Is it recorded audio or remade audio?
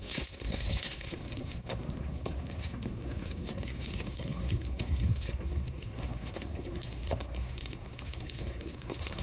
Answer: remade